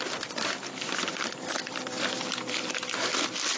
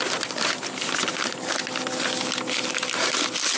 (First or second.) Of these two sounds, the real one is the second